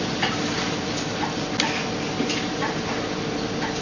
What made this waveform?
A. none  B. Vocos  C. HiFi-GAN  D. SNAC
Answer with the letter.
A